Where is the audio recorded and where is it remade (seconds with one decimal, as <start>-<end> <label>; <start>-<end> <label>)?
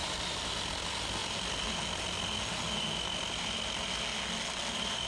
0.0-0.5 remade; 0.5-5.1 recorded